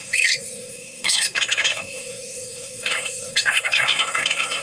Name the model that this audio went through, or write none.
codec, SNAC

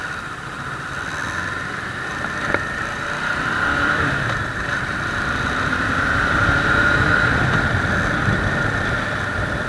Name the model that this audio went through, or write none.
vocoder, BigVGAN v2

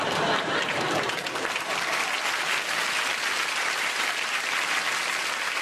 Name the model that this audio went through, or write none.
none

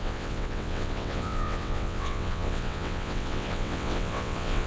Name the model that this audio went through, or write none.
vocoder, WaveNeXt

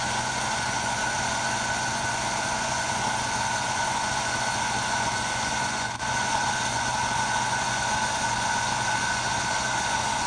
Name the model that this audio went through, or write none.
vocoder, Vocos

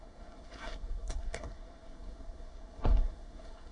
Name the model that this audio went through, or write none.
codec, SNAC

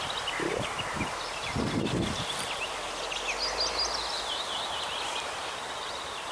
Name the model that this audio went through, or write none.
none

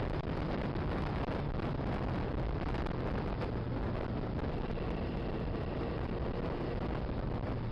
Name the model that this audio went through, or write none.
none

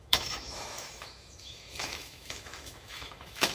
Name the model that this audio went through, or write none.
autoencoder, DAC-VAE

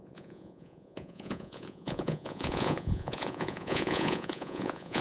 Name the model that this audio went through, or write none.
vocoder, Vocos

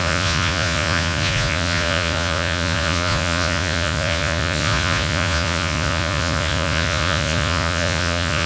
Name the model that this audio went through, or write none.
vocoder, Vocos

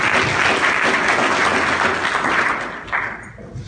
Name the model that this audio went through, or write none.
none